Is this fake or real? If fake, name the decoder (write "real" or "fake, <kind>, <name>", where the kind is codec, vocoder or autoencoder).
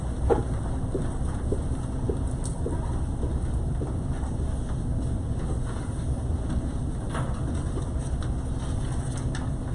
real